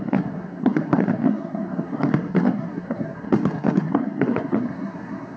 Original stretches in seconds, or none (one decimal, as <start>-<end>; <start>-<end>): none